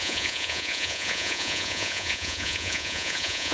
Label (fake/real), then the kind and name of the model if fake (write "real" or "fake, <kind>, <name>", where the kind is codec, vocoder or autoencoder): fake, vocoder, Vocos